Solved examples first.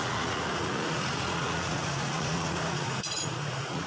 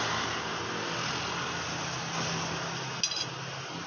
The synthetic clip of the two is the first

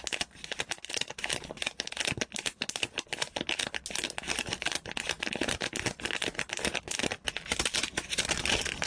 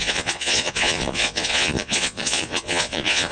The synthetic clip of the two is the second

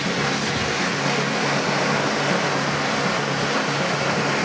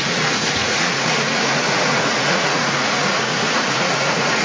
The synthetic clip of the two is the second